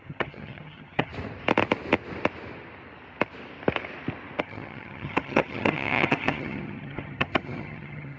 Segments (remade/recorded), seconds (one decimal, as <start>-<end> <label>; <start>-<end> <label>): 0.0-1.1 remade; 1.1-4.4 recorded; 4.4-8.2 remade

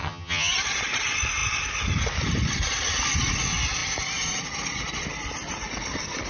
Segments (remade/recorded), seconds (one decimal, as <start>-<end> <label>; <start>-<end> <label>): 0.0-0.5 remade; 0.5-6.3 recorded

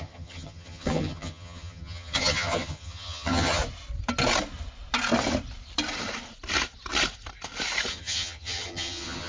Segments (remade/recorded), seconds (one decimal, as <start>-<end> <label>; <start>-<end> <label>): 0.0-3.6 remade; 3.6-7.9 recorded; 7.9-9.3 remade

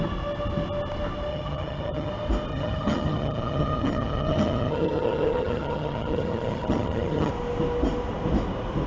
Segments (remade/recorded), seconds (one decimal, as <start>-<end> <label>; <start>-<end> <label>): 0.0-1.3 recorded; 1.3-2.1 remade; 2.1-2.5 recorded; 2.5-7.3 remade; 7.3-8.9 recorded